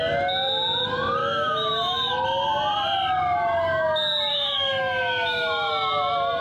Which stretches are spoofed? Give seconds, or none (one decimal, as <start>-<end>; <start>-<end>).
1.2-2.1; 4.3-5.7